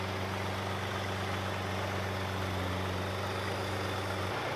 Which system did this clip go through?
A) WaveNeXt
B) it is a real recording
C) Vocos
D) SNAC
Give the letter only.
B